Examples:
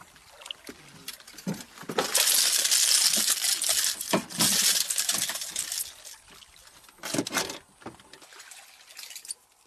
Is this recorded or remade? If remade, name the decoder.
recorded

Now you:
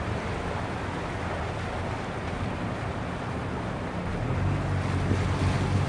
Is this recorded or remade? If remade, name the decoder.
recorded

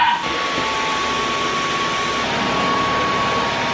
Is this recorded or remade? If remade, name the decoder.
recorded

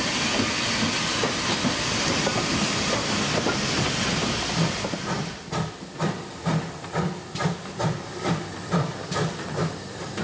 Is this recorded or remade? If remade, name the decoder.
recorded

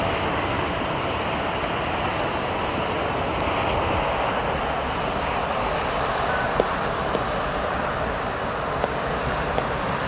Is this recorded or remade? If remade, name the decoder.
recorded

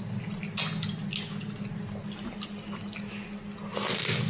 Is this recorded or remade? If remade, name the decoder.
recorded